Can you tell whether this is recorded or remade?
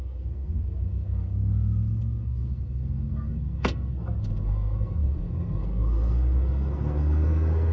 remade